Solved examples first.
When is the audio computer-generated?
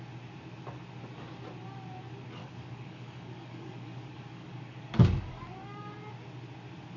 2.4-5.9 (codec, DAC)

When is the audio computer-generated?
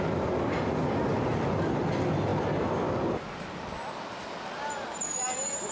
none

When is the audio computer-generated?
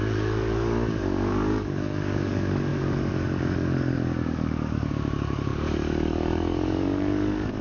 0.0-7.6 (codec, DAC)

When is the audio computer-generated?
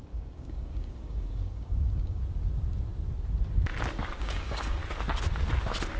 0.0-2.2 (codec, DAC); 4.2-4.8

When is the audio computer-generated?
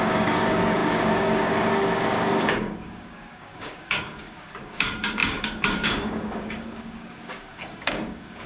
0.0-8.5 (codec, DAC)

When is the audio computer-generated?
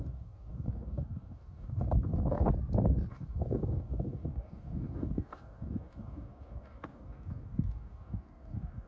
0.0-2.5 (codec, DAC); 3.1-8.9